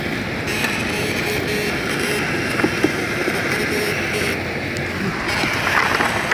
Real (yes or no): yes